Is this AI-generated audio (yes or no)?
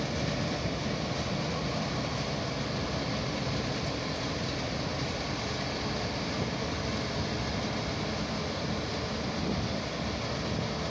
no